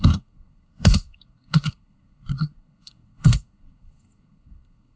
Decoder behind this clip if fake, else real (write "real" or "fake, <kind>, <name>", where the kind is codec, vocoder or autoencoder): fake, codec, SNAC